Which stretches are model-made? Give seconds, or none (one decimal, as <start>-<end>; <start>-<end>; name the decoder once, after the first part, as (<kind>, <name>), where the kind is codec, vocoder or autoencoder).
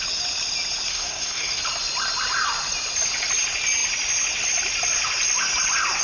0.9-1.6 (codec, SNAC)